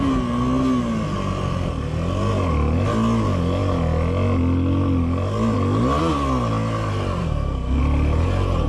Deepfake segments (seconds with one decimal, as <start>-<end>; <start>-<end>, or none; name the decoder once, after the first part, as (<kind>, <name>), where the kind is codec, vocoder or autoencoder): 7.2-7.8 (codec, SNAC)

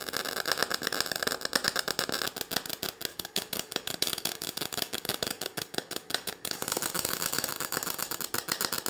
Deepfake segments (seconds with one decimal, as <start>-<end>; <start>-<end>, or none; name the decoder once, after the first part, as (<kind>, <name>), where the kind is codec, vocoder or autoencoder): 3.1-8.2 (codec, DAC)

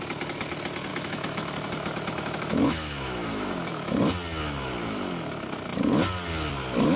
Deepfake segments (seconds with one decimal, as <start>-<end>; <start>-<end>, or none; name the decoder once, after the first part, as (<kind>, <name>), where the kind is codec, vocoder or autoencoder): 0.9-4.0 (autoencoder, DAC-VAE)